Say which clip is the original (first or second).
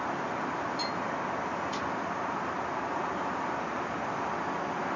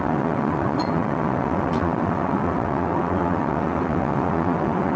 first